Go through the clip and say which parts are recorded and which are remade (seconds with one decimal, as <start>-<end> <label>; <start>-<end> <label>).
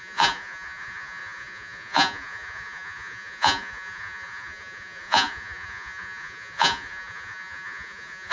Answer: 0.0-8.3 remade